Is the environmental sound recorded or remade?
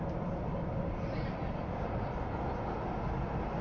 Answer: recorded